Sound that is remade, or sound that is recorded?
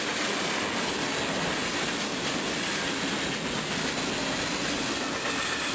recorded